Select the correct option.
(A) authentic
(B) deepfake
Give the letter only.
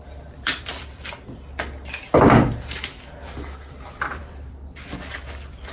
B